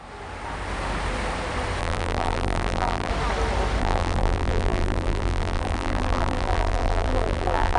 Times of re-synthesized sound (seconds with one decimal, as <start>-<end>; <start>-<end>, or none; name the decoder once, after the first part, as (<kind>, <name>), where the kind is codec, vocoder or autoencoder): 1.8-3.1 (vocoder, BigVGAN v2); 3.8-7.8